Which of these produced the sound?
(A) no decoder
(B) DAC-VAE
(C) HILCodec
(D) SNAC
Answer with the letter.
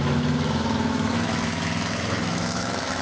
B